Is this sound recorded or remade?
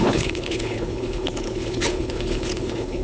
remade